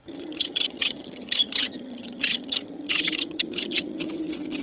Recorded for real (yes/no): no